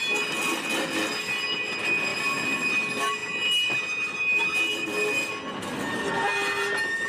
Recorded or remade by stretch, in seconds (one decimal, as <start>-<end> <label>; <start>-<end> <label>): 0.0-7.1 recorded